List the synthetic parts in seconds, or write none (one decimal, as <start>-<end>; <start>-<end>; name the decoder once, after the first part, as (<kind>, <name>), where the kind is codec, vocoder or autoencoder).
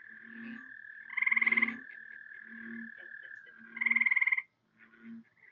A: none